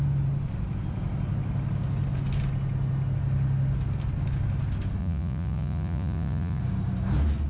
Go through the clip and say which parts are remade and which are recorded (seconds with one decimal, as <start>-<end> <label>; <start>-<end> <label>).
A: 0.0-5.0 recorded; 5.0-6.6 remade; 6.6-7.5 recorded